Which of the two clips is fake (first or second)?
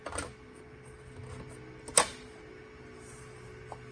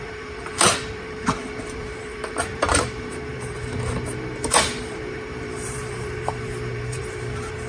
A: second